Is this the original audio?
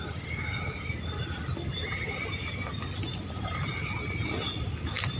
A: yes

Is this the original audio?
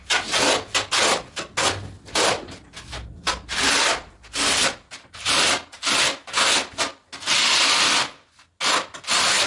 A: yes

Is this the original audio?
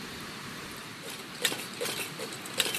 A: no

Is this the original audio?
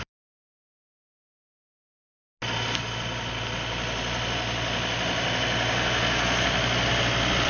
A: yes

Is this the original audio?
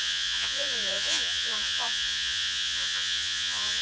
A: no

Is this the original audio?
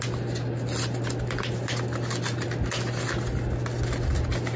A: yes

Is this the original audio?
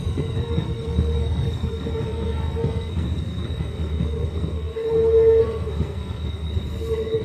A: no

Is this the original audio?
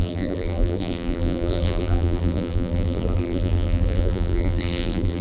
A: no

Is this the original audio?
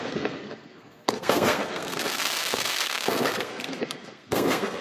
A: no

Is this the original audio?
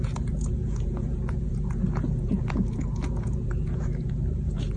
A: no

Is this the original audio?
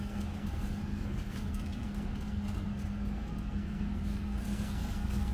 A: no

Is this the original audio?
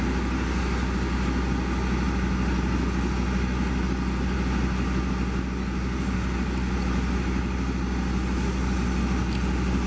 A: yes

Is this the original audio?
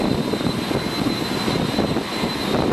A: yes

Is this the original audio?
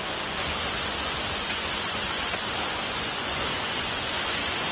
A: no